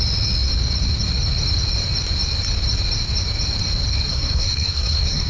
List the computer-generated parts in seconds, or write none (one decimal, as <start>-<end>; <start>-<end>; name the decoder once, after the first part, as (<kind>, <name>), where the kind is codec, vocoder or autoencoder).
4.1-5.3 (codec, SNAC)